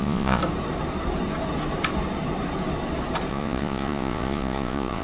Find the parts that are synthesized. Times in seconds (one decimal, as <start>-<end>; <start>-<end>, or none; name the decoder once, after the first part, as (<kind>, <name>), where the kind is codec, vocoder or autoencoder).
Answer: 0.0-0.4 (vocoder, Vocos); 3.3-5.0